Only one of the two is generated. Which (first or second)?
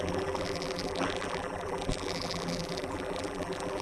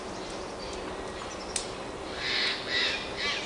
first